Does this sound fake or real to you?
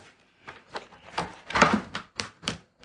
fake